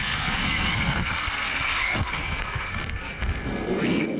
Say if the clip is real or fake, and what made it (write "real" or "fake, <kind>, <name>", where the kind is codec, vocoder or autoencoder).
fake, codec, SNAC